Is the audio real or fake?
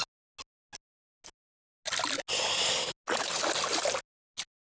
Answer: real